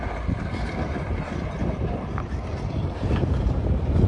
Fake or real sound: fake